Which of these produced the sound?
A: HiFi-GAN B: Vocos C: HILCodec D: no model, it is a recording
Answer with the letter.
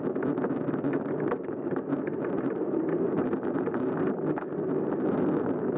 D